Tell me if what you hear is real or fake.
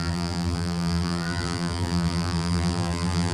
fake